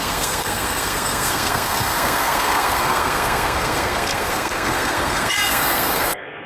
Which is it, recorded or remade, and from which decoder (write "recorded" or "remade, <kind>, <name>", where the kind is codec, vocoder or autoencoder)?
remade, codec, SNAC